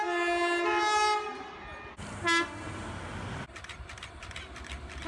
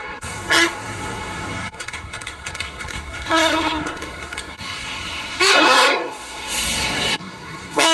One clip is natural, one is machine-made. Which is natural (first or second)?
first